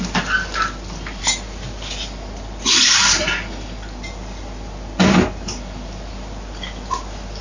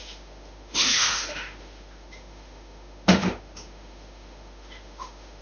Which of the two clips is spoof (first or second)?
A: second